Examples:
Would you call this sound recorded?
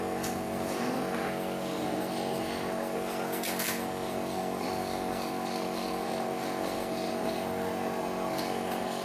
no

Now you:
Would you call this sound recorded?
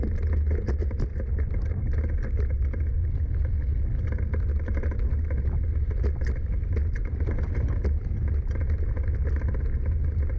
yes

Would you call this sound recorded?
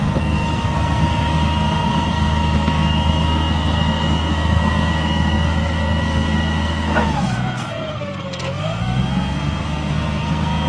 no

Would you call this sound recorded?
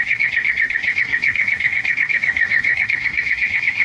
no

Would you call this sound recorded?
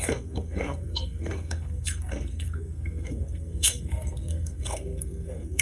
no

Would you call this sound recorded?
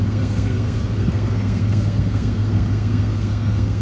no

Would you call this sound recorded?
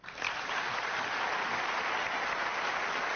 yes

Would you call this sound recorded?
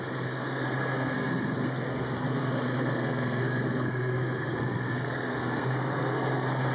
no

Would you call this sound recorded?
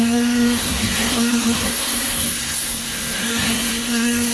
no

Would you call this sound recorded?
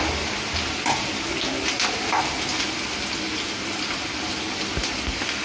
yes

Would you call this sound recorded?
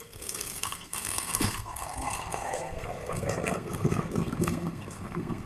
no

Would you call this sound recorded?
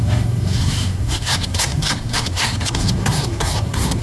no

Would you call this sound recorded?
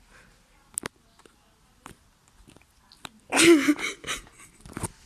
yes